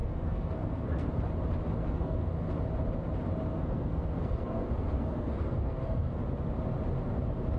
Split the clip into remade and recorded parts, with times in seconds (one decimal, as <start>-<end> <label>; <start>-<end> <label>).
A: 0.0-1.1 remade; 1.1-1.8 recorded; 1.8-2.3 remade; 2.3-3.5 recorded; 3.5-6.2 remade; 6.2-7.6 recorded